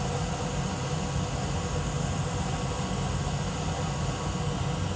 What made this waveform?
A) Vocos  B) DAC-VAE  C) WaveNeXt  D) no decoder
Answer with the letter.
D